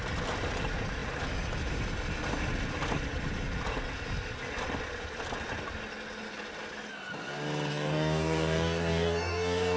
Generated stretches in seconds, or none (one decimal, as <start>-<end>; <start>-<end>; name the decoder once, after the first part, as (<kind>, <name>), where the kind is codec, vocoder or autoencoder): 7.7-9.8 (codec, DAC)